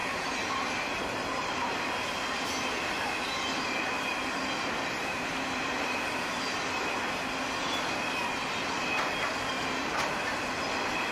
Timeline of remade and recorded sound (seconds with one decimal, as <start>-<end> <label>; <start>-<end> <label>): 0.0-1.7 remade; 1.7-11.1 recorded